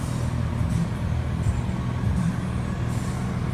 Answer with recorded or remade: recorded